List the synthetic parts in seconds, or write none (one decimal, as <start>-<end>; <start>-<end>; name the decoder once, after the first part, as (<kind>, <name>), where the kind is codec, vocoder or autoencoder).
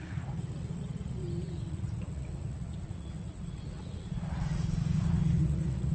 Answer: 0.0-1.2 (vocoder, Vocos); 1.7-5.9